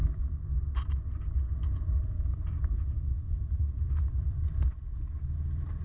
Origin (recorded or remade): remade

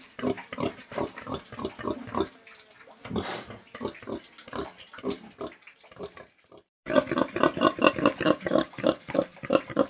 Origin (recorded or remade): remade